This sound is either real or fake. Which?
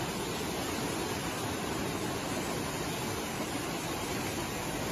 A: real